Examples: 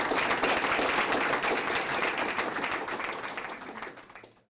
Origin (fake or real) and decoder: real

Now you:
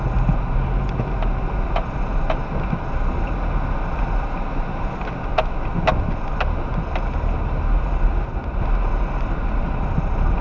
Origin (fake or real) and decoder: real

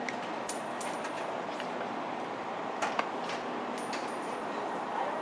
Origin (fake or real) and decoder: real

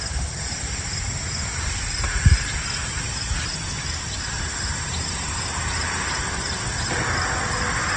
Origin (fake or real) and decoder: real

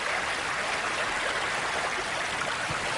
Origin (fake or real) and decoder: real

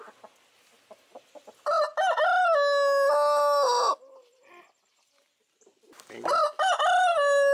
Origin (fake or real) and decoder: real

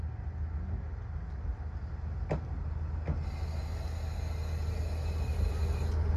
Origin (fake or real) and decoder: real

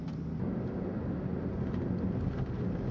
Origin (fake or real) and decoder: real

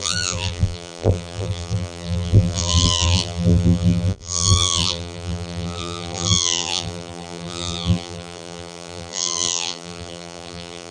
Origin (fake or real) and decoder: fake, vocoder, BigVGAN v2